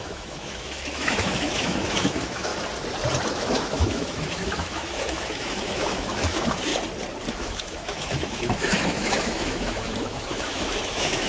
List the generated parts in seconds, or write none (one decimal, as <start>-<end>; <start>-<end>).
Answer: 0.0-2.5; 3.3-6.7; 7.3-11.3